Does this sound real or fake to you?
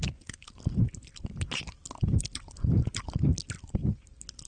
real